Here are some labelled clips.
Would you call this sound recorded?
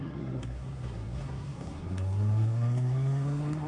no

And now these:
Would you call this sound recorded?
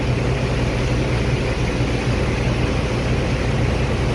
yes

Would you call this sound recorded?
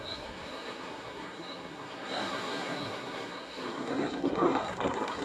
no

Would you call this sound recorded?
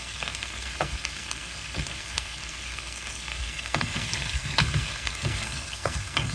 no